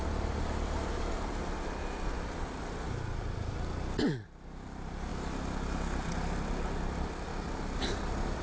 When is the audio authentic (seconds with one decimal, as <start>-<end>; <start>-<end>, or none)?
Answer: 0.0-8.4